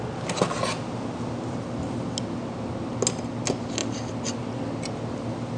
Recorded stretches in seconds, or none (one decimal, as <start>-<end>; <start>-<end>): 0.0-5.6

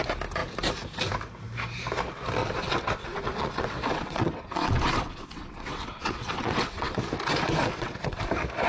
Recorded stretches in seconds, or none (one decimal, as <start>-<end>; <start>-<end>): 0.0-2.4; 7.0-7.6; 8.2-8.7

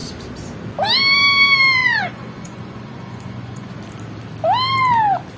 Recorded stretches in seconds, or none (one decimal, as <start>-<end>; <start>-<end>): 0.0-1.8; 3.7-5.4

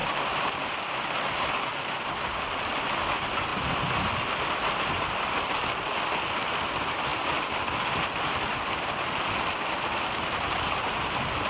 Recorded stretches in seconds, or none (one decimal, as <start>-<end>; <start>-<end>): 0.6-11.5

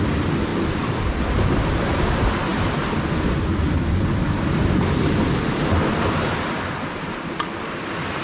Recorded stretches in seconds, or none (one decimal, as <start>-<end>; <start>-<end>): 0.0-8.2

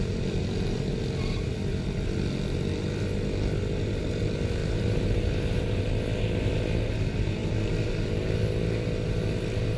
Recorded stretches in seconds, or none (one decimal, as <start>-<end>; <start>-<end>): 0.0-4.6; 5.9-9.8